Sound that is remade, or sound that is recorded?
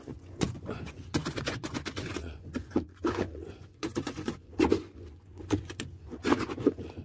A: remade